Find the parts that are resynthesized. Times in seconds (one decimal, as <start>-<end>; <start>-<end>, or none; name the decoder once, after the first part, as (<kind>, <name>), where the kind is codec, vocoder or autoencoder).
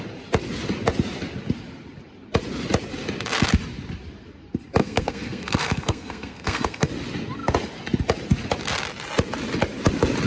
4.8-6.9 (codec, SNAC)